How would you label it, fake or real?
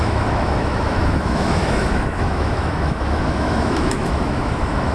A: fake